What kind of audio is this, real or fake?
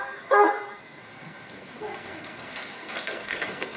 fake